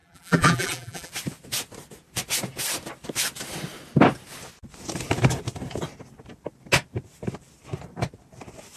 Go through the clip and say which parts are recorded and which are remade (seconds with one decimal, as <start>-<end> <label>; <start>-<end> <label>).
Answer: 0.0-1.1 remade; 1.1-8.8 recorded